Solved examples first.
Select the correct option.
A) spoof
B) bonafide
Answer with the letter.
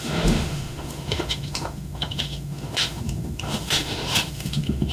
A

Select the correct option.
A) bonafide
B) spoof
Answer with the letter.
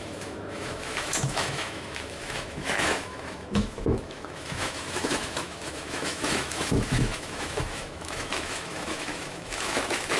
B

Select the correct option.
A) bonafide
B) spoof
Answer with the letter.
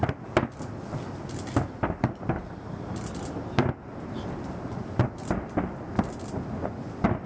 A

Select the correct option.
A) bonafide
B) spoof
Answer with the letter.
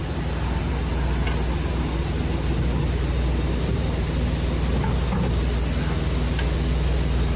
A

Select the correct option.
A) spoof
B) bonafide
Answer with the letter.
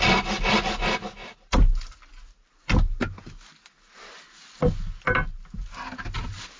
B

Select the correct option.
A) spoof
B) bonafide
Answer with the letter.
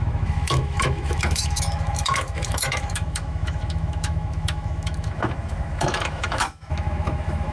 A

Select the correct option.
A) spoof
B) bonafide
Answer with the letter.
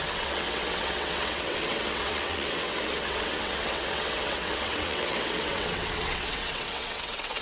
A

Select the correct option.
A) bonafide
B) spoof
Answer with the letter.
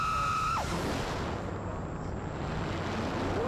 A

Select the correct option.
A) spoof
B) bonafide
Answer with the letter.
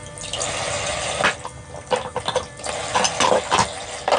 B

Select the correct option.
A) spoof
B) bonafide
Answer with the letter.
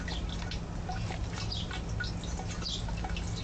B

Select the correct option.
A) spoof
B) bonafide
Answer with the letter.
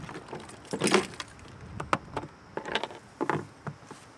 B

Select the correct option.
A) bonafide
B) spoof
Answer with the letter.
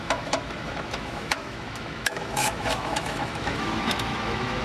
B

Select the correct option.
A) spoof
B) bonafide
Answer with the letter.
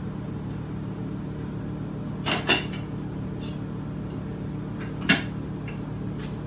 B